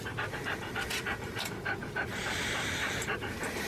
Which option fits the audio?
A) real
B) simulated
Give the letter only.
A